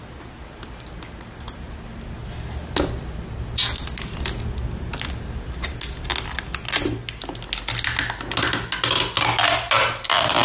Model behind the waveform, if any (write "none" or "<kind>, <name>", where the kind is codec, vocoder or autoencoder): none